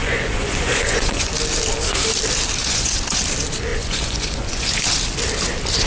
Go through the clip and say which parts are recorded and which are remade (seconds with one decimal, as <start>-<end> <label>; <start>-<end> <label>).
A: 0.0-1.3 remade; 1.3-2.6 recorded; 2.6-3.2 remade; 3.2-3.7 recorded; 3.7-4.8 remade; 4.8-5.9 recorded